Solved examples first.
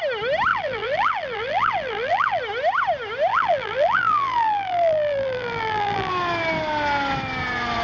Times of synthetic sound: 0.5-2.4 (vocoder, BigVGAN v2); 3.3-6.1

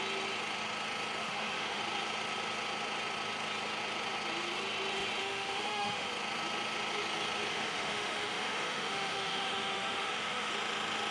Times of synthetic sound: 1.2-1.8 (autoencoder, DAC-VAE); 5.2-6.1; 7.5-10.5

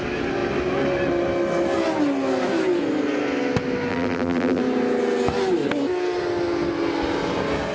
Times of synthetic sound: 3.9-4.6 (vocoder, BigVGAN v2)

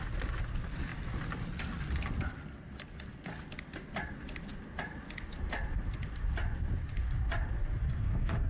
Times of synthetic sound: 7.8-8.5 (codec, DAC)

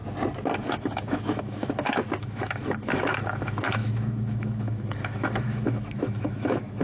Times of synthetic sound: 0.7-6.8 (autoencoder, DAC-VAE)

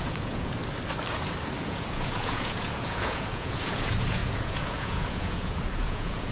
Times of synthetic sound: 0.0-0.6 (vocoder, Vocos); 1.6-6.3

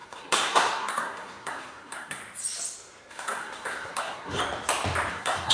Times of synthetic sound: 0.0-2.2 (codec, SNAC); 3.1-4.4; 5.1-5.5

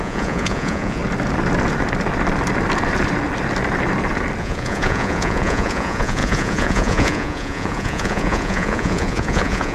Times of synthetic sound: 0.0-1.0 (vocoder, Vocos); 4.4-9.7